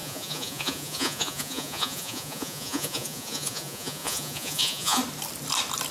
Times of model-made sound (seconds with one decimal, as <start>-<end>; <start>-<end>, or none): 0.0-5.0